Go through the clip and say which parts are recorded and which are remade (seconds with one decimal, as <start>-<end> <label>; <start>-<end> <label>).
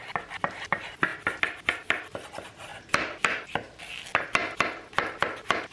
0.0-1.1 remade; 1.1-1.7 recorded; 1.7-2.7 remade; 2.7-3.4 recorded; 3.4-4.4 remade; 4.4-5.2 recorded; 5.2-5.7 remade